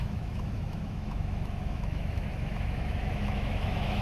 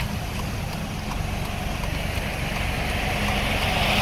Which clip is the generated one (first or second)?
first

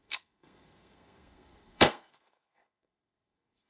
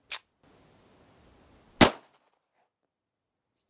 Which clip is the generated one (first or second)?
first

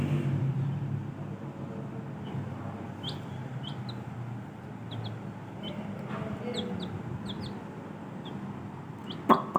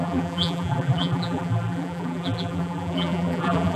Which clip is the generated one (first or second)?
second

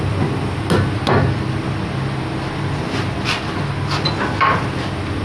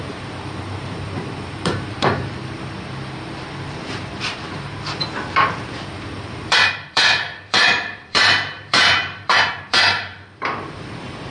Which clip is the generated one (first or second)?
second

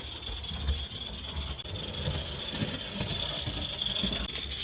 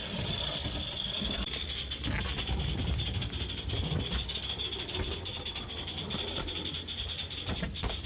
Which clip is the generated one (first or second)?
second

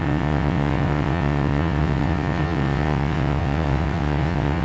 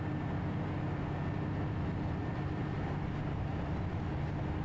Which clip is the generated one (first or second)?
first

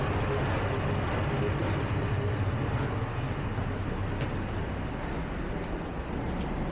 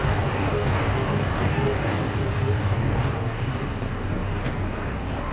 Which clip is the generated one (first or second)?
second